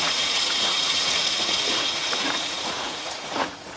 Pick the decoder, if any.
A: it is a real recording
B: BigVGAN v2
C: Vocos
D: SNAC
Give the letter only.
C